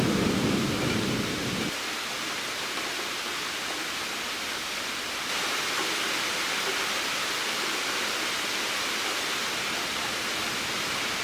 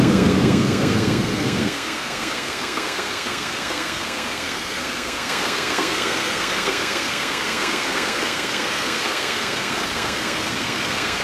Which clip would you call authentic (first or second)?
first